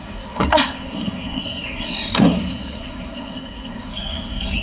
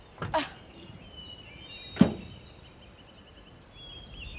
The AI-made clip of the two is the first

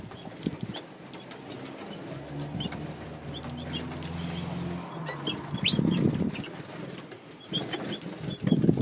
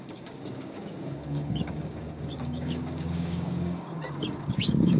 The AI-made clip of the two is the second